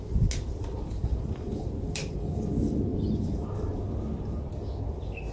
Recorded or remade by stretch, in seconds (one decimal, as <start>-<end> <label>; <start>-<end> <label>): 0.0-1.0 recorded; 1.0-2.5 remade; 2.5-2.9 recorded; 2.9-3.8 remade; 3.8-5.3 recorded